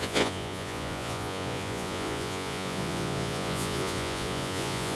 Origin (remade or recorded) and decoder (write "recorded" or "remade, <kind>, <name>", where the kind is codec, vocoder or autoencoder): remade, vocoder, Vocos